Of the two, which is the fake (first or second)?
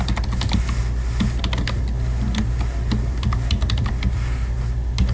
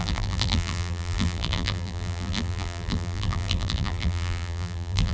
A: second